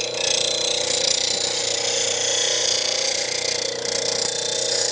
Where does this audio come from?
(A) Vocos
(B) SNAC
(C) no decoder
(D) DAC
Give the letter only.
C